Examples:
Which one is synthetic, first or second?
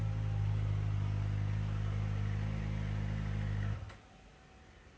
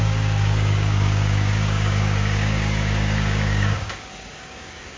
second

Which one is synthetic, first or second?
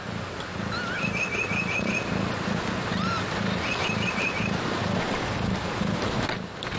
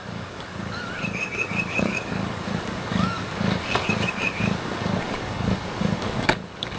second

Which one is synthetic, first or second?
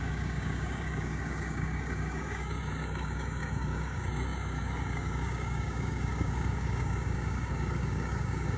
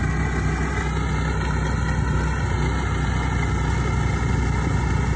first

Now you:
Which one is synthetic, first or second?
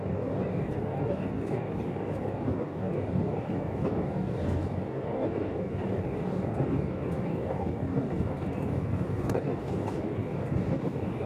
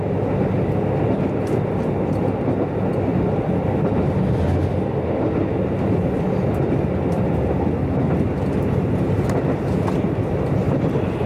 first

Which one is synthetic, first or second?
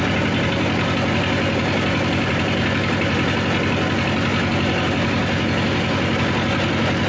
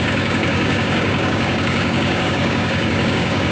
second